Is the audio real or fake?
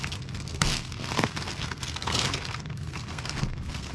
fake